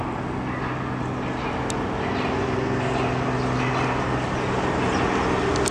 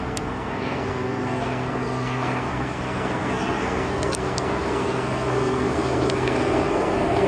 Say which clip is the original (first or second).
first